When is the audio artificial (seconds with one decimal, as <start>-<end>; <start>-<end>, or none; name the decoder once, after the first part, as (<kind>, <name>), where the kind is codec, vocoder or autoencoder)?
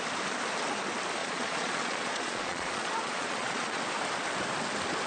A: 1.2-3.8 (vocoder, Vocos)